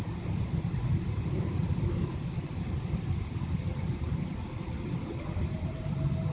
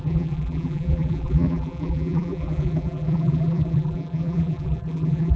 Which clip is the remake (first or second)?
second